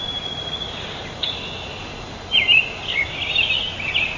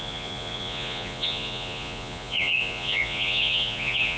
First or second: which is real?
first